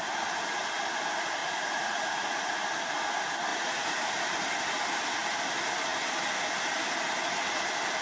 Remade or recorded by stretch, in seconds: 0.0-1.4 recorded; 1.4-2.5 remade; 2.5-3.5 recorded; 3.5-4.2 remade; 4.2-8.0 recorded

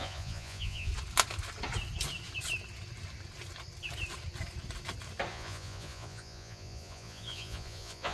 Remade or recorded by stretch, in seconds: 0.0-0.9 remade; 0.9-5.3 recorded; 5.3-8.1 remade

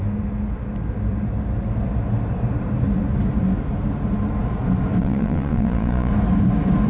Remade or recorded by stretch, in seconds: 0.0-5.0 recorded; 5.0-6.1 remade; 6.1-6.9 recorded

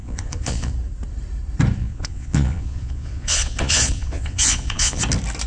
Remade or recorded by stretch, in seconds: 0.0-0.7 remade; 0.7-1.8 recorded; 1.8-5.0 remade; 5.0-5.5 recorded

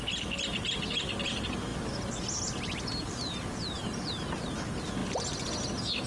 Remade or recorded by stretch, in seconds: 0.0-6.1 recorded

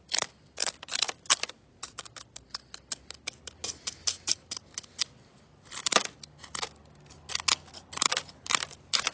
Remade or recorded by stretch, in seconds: 0.0-9.1 recorded